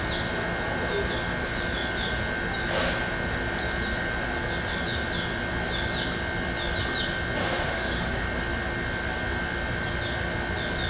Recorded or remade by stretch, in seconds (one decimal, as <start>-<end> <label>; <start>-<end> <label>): 0.0-7.4 recorded; 7.4-8.2 remade; 8.2-10.9 recorded

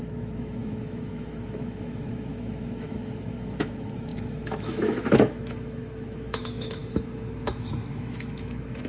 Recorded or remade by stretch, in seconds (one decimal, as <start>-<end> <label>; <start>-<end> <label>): 0.0-8.9 remade

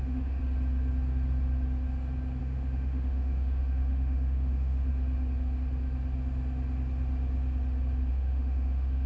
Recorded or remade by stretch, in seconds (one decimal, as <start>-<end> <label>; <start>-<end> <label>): 0.0-0.4 remade; 0.4-2.4 recorded; 2.4-4.9 remade; 4.9-8.1 recorded; 8.1-9.1 remade

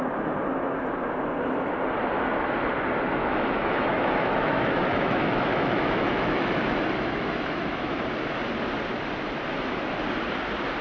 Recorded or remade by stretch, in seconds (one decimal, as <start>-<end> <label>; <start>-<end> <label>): 0.0-3.2 recorded; 3.2-8.0 remade; 8.0-10.8 recorded

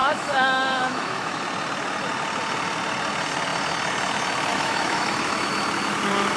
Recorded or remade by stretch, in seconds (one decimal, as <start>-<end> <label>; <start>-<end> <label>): 0.0-1.4 remade; 1.4-4.5 recorded; 4.5-5.5 remade; 5.5-6.4 recorded

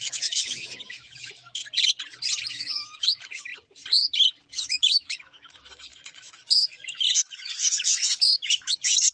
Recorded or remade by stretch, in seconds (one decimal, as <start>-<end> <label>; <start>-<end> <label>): 0.0-1.6 remade; 1.6-2.5 recorded; 2.5-3.5 remade; 3.5-4.5 recorded; 4.5-9.1 remade

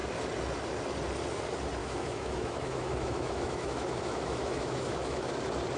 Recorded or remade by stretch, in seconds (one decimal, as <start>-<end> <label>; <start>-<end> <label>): 0.0-1.8 recorded; 1.8-5.3 remade; 5.3-5.8 recorded

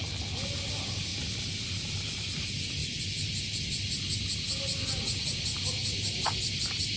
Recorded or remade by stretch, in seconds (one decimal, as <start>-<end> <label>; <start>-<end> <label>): 0.0-7.0 recorded